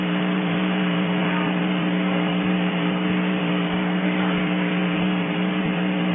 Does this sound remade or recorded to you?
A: remade